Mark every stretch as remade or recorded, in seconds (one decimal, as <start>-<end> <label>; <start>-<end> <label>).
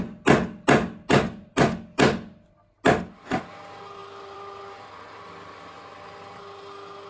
0.0-4.0 recorded; 4.0-6.4 remade; 6.4-7.1 recorded